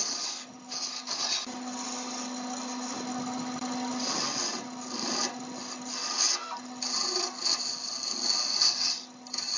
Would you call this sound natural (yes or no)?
yes